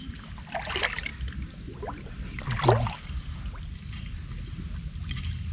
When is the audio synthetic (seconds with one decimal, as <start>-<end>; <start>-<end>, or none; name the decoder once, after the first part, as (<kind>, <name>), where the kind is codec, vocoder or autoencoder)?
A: none